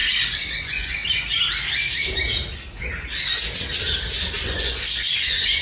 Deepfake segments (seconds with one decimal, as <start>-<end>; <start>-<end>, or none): 0.6-1.0; 4.4-5.6